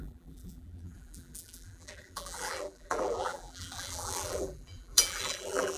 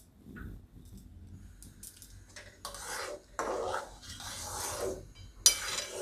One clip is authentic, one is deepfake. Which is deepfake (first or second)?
first